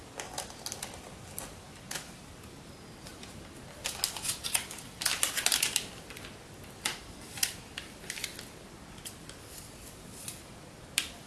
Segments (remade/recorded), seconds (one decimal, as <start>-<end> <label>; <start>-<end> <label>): 0.0-11.3 recorded